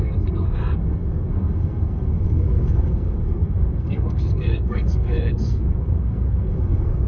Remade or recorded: remade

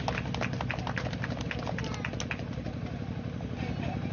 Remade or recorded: recorded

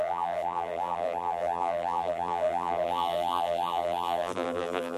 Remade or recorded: remade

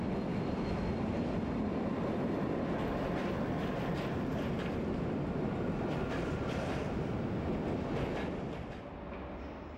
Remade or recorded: recorded